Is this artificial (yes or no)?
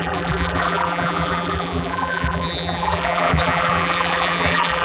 yes